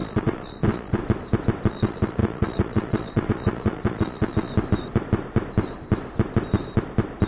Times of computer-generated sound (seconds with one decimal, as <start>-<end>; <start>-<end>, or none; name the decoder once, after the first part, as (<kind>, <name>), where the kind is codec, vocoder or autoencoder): 0.0-1.0 (vocoder, Vocos); 1.7-4.5